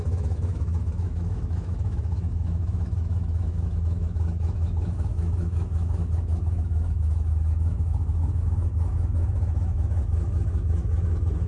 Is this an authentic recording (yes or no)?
no